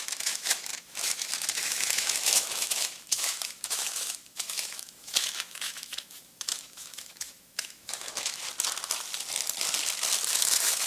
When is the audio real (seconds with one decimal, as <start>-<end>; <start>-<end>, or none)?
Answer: 8.4-10.3